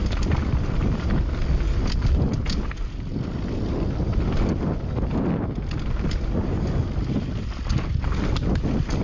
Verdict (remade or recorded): recorded